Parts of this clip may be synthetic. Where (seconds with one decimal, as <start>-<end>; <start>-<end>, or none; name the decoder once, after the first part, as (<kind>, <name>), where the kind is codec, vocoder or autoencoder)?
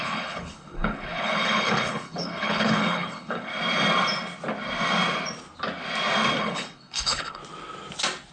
0.0-3.5 (codec, HILCodec); 6.4-7.4